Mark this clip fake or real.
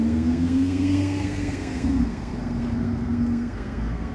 fake